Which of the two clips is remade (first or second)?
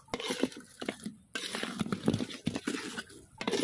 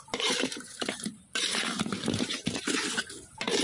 second